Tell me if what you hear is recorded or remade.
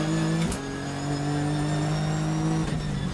recorded